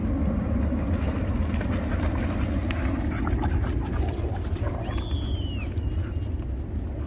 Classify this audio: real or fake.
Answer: real